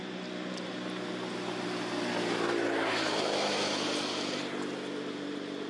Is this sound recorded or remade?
recorded